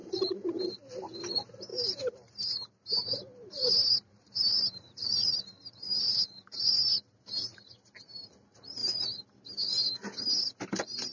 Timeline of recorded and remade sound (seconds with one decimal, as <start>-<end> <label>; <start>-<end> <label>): 0.0-1.7 recorded; 1.7-2.3 remade; 2.3-3.6 recorded; 3.6-7.6 remade; 7.6-11.1 recorded